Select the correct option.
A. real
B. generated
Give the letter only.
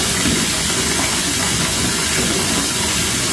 B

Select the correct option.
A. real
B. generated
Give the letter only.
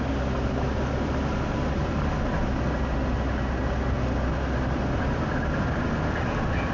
A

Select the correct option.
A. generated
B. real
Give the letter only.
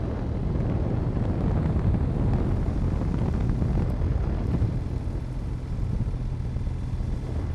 B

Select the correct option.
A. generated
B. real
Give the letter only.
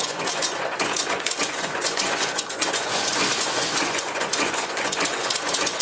A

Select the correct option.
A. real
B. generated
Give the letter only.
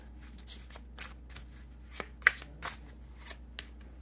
A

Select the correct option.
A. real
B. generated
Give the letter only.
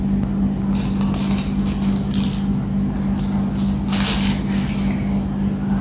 A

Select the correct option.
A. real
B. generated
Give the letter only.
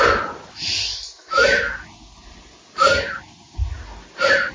A